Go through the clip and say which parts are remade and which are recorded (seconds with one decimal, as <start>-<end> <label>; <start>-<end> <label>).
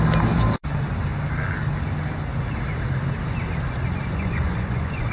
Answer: 0.0-4.0 recorded; 4.0-5.1 remade